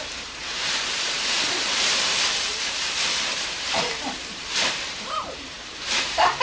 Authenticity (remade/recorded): remade